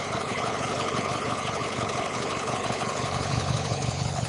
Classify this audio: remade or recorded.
remade